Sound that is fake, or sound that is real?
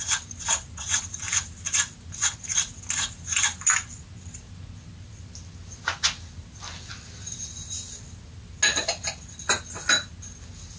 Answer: real